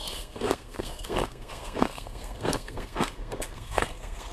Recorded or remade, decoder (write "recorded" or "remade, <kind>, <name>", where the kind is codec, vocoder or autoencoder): remade, codec, SNAC